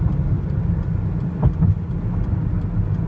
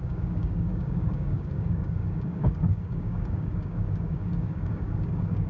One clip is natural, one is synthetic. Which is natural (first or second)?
first